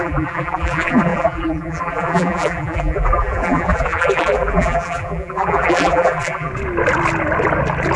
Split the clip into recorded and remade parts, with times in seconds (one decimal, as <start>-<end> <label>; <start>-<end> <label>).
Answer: 0.0-6.5 remade; 6.5-8.0 recorded